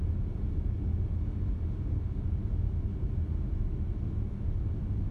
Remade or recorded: recorded